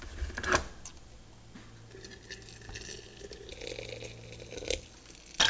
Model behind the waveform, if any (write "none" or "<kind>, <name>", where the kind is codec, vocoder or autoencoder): none